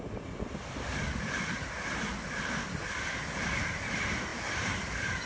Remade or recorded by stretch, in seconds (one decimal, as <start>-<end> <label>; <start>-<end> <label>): 0.0-5.3 recorded